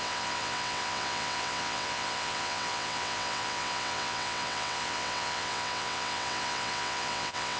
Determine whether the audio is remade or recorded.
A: remade